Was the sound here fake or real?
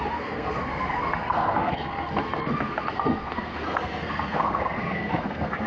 fake